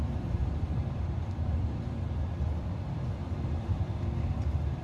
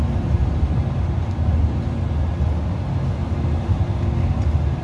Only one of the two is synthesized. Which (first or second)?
first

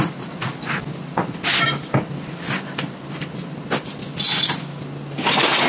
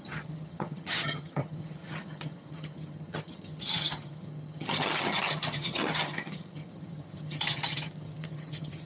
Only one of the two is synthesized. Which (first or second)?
second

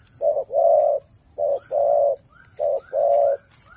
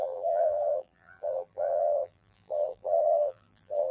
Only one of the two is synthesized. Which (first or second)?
second